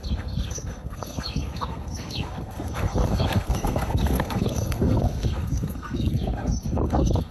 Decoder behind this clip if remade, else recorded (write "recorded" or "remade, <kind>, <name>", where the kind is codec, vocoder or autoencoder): remade, codec, SNAC